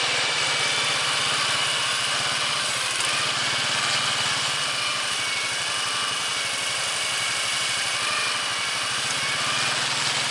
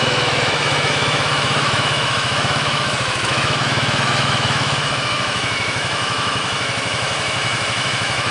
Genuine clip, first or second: first